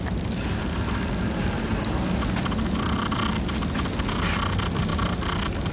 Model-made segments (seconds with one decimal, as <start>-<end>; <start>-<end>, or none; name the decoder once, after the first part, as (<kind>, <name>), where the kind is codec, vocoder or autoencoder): none